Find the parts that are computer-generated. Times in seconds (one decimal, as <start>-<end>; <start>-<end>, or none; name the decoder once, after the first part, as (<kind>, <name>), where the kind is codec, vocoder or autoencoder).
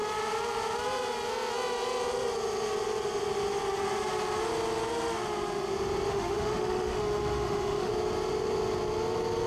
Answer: 6.1-7.9 (autoencoder, DAC-VAE)